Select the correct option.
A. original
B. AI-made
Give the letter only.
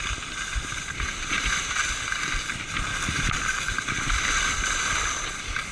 A